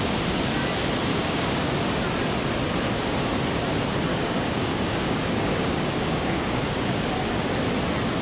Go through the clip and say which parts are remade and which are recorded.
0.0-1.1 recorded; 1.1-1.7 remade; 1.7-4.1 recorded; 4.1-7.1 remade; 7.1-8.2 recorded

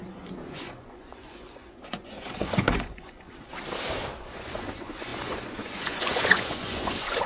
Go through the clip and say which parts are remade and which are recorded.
0.0-3.5 remade; 3.5-4.2 recorded; 4.2-7.3 remade

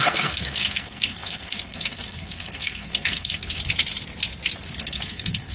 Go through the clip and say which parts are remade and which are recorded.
0.0-3.6 remade; 3.6-4.8 recorded; 4.8-5.5 remade